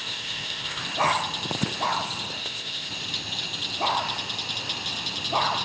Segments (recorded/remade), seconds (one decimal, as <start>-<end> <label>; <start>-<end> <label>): 0.0-0.8 remade; 0.8-2.4 recorded; 2.4-2.9 remade; 2.9-5.6 recorded

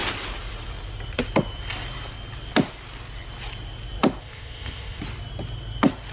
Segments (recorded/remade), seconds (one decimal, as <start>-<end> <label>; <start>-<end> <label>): 0.0-4.2 recorded; 4.2-5.0 remade; 5.0-6.1 recorded